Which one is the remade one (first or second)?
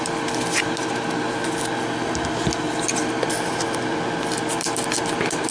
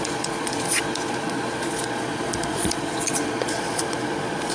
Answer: second